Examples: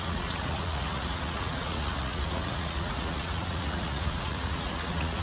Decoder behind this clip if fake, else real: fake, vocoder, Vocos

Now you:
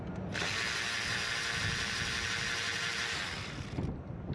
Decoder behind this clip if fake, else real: real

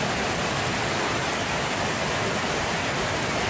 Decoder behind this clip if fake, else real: real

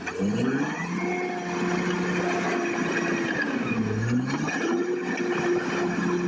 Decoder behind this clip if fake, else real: real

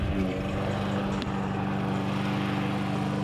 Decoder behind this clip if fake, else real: real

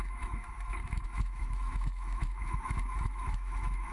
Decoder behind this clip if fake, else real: fake, autoencoder, DAC-VAE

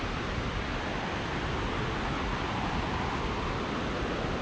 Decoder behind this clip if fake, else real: real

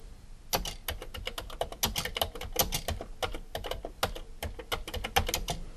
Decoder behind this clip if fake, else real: real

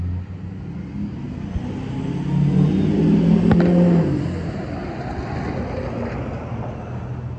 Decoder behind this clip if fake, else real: real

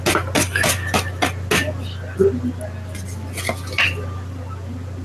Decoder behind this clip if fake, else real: real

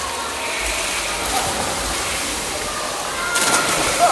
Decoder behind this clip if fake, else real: real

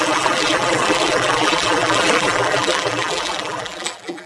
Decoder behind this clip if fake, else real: fake, vocoder, BigVGAN v2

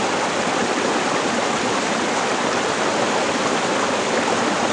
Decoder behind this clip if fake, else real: real